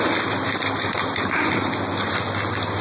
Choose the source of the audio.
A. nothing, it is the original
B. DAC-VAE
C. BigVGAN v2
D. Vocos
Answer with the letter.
A